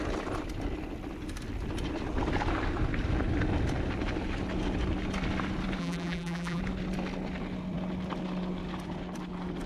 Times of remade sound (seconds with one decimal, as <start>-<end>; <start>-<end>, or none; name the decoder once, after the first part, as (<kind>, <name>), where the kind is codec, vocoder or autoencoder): 5.8-6.6 (vocoder, BigVGAN v2)